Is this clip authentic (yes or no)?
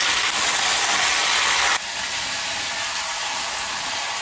yes